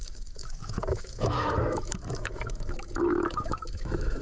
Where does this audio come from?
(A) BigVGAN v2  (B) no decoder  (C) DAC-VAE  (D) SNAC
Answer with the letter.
C